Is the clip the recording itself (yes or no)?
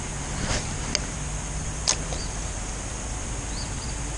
yes